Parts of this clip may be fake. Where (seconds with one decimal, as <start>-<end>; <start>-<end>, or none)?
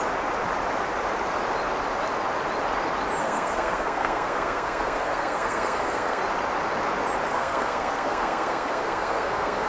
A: 3.2-6.2; 7.3-9.7